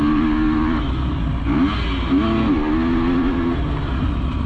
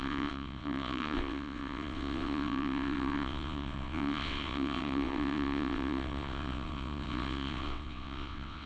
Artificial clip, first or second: second